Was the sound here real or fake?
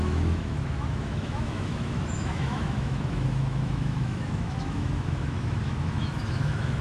fake